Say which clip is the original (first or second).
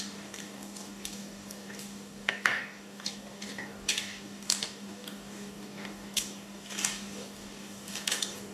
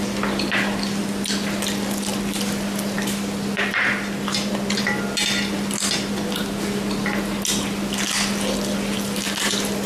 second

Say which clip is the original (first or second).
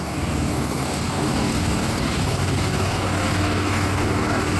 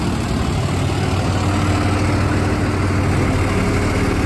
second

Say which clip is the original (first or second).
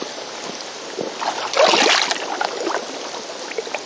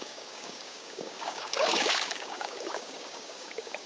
first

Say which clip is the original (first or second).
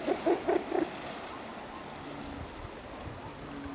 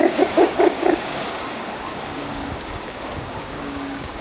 first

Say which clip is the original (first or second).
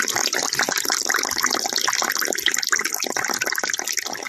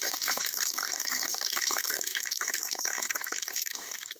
first